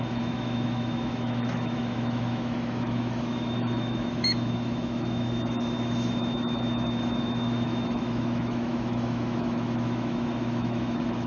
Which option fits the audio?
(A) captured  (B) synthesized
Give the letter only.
B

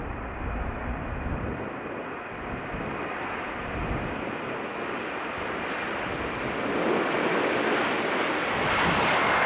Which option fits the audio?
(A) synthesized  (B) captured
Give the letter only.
B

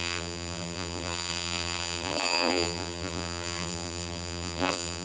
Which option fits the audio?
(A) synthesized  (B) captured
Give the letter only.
A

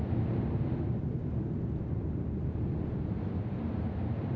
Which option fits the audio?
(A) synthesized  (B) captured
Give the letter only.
B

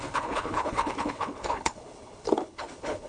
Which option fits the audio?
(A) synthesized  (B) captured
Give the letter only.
A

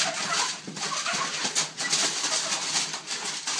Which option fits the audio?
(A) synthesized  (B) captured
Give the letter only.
B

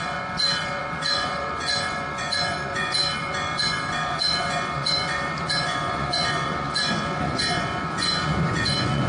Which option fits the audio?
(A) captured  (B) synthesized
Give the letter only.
B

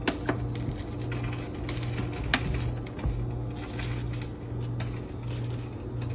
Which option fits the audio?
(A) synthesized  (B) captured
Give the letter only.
B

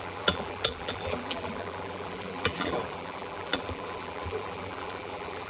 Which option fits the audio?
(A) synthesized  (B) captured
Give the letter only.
A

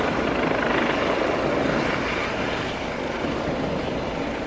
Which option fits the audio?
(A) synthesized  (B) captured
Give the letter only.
B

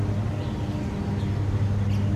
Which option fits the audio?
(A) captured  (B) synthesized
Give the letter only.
A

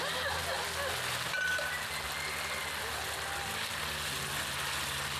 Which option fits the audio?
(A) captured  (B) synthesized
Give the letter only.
A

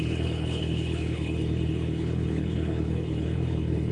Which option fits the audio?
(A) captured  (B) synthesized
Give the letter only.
B